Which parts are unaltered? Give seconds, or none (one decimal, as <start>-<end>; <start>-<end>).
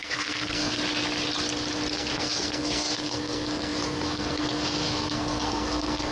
0.8-1.9